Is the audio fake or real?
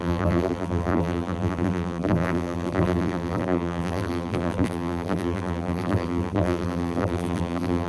fake